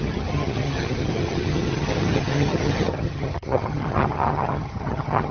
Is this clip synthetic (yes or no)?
yes